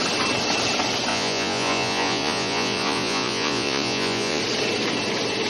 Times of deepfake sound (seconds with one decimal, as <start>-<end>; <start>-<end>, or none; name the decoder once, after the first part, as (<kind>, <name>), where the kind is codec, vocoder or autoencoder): 1.1-4.4 (vocoder, Vocos)